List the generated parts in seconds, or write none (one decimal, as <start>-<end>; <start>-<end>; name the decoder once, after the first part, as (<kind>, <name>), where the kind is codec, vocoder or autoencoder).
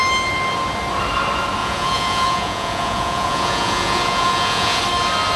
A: 1.6-4.8 (vocoder, Vocos)